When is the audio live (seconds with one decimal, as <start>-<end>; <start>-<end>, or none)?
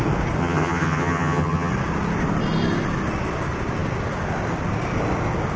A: 0.0-0.4; 1.7-5.6